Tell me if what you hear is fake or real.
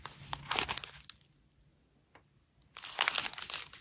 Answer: real